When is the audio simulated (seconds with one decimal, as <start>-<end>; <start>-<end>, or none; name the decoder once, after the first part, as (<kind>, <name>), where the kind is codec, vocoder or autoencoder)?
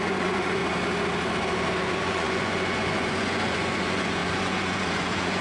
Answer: 0.0-0.6 (vocoder, Vocos); 1.9-5.4